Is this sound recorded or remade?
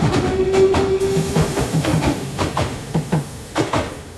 remade